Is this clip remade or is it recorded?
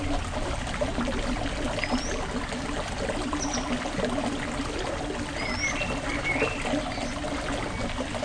recorded